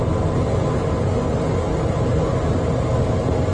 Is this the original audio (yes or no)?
yes